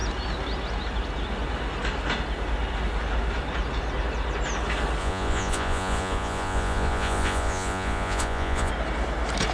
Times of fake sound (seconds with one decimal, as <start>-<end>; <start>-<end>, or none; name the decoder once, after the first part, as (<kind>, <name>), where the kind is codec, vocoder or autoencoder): 5.0-8.7 (vocoder, Vocos)